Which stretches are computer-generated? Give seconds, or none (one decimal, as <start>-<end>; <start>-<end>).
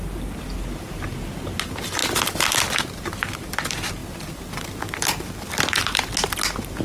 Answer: 4.0-6.1